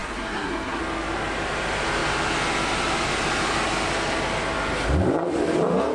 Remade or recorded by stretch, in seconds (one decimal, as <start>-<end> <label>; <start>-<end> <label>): 0.0-0.8 remade; 0.8-5.9 recorded